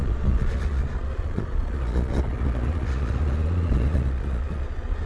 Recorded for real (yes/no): no